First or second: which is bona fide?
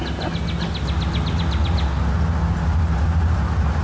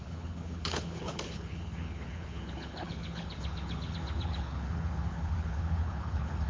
first